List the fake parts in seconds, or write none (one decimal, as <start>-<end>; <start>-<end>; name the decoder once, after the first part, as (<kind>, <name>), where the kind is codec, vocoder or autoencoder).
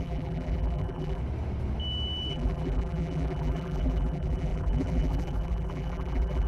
0.0-1.2 (vocoder, BigVGAN v2); 2.3-6.5